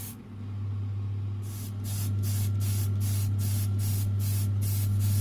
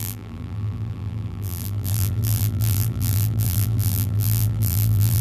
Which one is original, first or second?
first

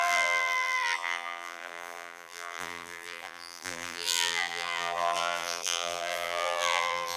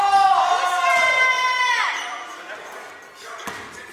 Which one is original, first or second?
second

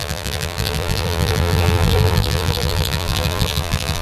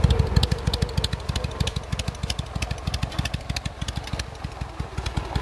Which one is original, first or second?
second